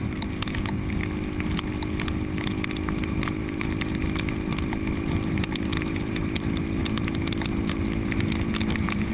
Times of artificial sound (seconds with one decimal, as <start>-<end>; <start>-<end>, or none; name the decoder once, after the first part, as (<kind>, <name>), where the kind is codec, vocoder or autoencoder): 3.4-4.0 (vocoder, BigVGAN v2); 4.5-6.1; 6.8-8.5